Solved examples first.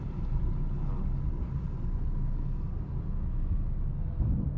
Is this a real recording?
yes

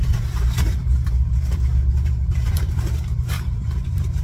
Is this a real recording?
no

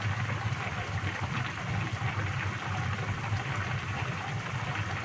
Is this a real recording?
yes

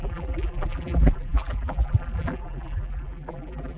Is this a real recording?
no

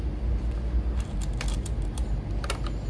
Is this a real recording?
yes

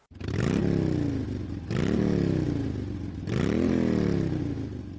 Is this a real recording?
yes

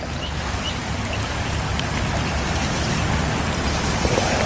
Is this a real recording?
no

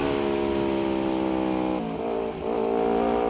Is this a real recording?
yes